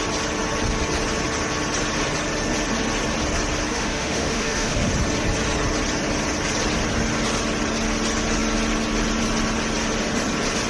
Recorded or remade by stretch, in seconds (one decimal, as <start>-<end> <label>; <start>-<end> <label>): 0.0-3.7 recorded; 3.7-4.9 remade; 4.9-10.7 recorded